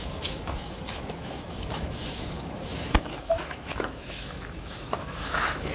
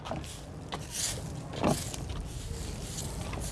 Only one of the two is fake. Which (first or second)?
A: first